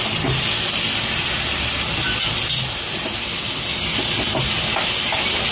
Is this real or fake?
real